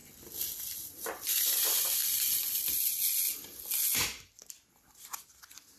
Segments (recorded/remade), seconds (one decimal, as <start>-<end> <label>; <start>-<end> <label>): 0.0-0.6 recorded; 0.6-2.0 remade; 2.0-4.5 recorded; 4.5-5.8 remade